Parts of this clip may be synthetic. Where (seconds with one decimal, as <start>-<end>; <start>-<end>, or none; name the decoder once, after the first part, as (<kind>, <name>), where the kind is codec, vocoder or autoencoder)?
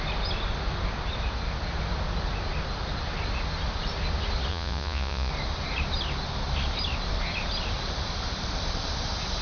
4.5-5.3 (vocoder, Vocos)